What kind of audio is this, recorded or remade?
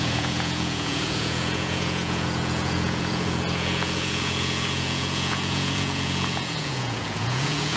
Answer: remade